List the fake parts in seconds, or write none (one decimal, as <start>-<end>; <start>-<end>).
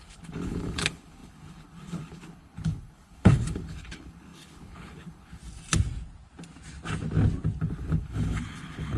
0.0-5.4; 7.6-9.0